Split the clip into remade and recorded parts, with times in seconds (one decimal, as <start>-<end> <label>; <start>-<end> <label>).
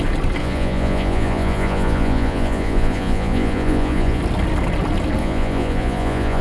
0.0-0.4 recorded; 0.4-4.2 remade; 4.2-5.2 recorded; 5.2-6.4 remade